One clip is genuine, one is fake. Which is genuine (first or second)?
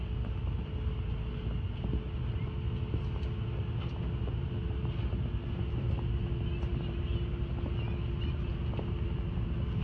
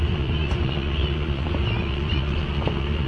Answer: first